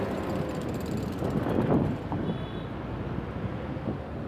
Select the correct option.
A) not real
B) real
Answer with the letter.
B